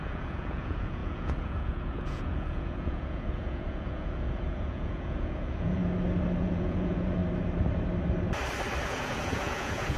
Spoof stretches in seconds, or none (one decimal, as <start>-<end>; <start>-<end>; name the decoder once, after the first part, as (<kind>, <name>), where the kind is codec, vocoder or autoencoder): 0.0-5.8 (vocoder, Vocos); 6.4-7.2; 8.8-10.0